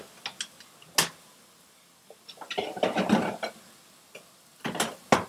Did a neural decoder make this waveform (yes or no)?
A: no